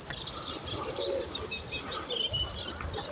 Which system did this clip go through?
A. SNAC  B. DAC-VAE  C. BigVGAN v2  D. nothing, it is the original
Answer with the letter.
D